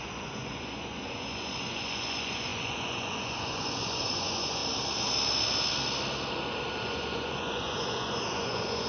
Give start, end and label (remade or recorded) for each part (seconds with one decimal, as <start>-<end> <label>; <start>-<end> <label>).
0.0-4.6 remade; 4.6-6.8 recorded; 6.8-8.9 remade